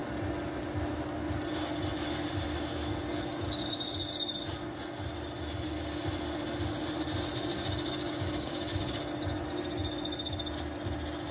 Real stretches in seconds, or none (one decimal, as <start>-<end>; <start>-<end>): 0.0-7.5; 8.8-11.3

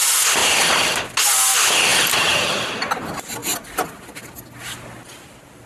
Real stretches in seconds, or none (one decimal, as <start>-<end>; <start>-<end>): 0.0-0.4; 1.1-1.9; 3.0-5.7

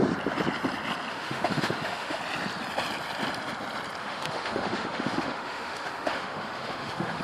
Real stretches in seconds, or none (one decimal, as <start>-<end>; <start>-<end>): 0.0-1.1; 2.2-4.0

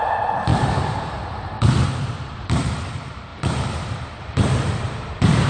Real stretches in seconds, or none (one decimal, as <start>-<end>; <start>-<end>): 0.0-0.5; 2.9-3.3

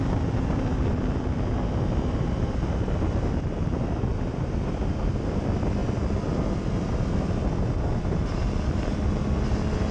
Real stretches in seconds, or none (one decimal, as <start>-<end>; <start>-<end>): 0.0-4.1; 4.7-9.9

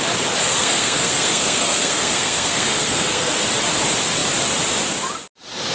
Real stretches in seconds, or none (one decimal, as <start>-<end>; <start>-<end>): 0.0-0.4; 3.3-5.7

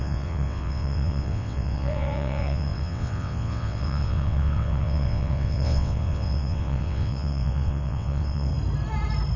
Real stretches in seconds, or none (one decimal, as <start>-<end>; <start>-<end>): 8.5-9.4